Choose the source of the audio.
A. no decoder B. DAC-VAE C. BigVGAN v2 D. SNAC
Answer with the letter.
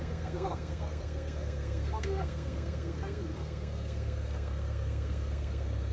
D